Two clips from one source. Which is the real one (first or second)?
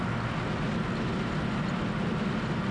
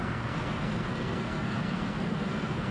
first